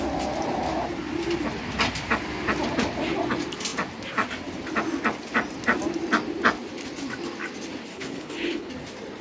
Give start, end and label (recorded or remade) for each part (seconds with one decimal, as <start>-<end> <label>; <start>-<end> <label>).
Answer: 0.0-7.9 recorded; 7.9-8.7 remade; 8.7-9.2 recorded